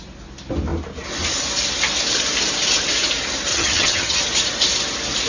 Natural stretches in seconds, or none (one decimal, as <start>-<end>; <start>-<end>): 0.0-3.5; 4.2-5.3